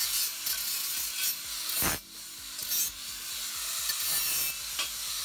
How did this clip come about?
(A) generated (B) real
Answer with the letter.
B